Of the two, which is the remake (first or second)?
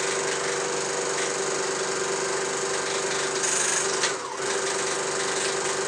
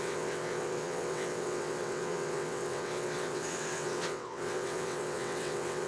second